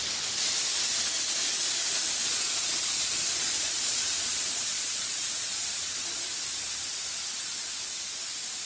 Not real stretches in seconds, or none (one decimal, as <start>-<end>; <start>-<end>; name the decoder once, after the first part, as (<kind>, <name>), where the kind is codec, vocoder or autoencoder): 2.2-6.2 (vocoder, Vocos)